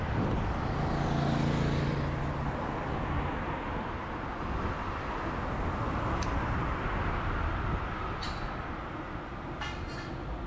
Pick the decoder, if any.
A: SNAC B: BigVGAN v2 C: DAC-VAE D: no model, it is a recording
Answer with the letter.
D